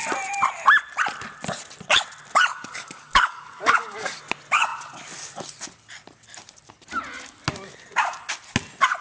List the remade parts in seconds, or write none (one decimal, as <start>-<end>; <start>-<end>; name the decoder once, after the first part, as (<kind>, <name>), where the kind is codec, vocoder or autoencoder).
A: 2.5-4.2 (codec, DAC)